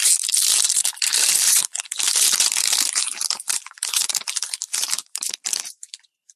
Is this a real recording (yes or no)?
no